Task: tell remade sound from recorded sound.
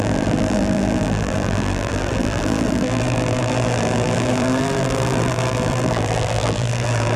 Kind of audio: remade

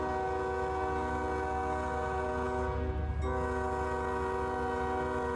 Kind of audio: recorded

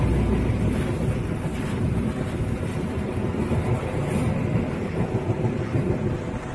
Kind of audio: recorded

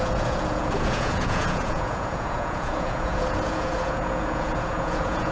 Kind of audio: remade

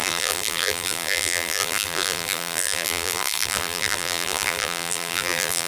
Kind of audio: remade